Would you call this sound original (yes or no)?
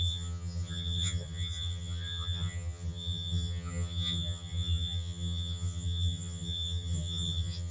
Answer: no